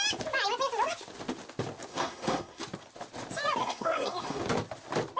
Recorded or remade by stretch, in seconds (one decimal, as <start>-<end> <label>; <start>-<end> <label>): 0.0-1.9 recorded; 1.9-2.6 remade; 2.6-3.6 recorded; 3.6-4.4 remade; 4.4-5.2 recorded